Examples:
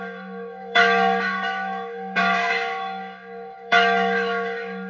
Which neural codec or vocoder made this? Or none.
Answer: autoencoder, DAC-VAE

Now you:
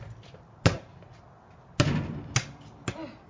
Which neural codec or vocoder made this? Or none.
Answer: none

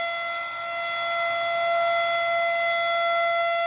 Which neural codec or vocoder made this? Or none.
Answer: none